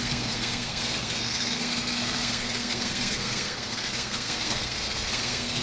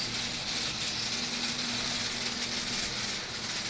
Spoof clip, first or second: first